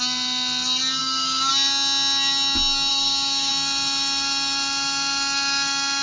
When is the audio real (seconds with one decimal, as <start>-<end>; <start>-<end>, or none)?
0.0-1.0; 1.5-2.9; 3.5-6.0